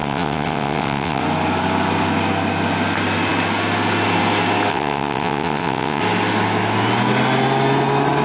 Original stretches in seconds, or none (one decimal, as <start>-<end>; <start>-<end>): 1.2-4.7; 6.0-8.2